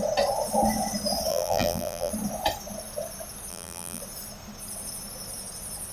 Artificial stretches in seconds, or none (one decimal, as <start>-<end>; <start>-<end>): 1.3-2.1; 3.5-4.0